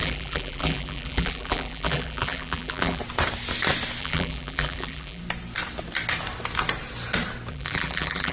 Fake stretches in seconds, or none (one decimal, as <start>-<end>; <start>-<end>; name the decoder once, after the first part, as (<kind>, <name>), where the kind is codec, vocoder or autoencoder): 0.0-3.0 (vocoder, BigVGAN v2); 4.0-5.2; 7.5-8.3